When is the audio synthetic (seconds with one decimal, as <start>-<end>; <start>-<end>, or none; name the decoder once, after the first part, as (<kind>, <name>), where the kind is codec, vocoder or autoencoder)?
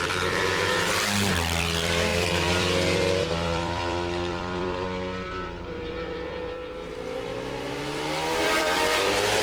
0.0-9.4 (vocoder, BigVGAN v2)